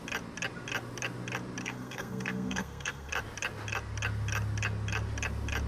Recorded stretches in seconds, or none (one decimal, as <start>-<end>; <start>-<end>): 0.0-1.6; 3.1-5.7